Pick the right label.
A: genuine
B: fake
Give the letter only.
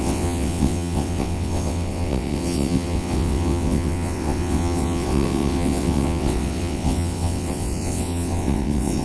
B